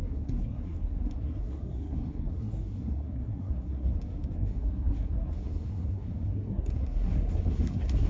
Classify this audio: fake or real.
fake